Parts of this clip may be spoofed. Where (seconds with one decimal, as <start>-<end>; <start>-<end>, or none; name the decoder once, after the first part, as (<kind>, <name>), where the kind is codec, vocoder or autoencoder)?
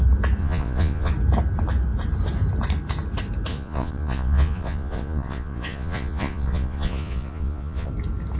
0.4-1.1 (vocoder, Vocos); 3.5-7.9